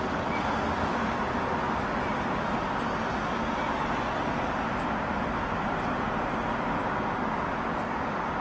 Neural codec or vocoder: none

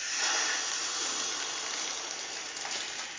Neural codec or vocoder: none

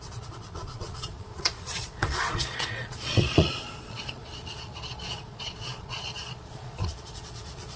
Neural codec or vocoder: vocoder, Vocos